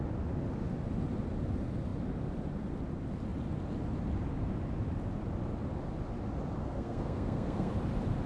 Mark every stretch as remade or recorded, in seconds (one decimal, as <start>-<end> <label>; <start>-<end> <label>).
0.0-6.6 recorded; 6.6-7.7 remade; 7.7-8.3 recorded